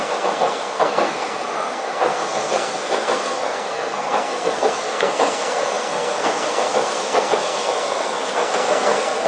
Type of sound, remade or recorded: remade